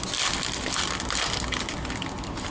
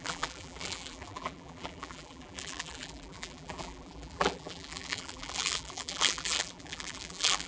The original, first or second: first